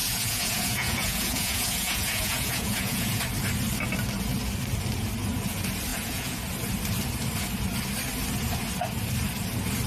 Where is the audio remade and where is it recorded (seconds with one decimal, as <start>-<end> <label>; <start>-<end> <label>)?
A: 0.0-3.2 remade; 3.2-5.9 recorded; 5.9-6.4 remade; 6.4-9.9 recorded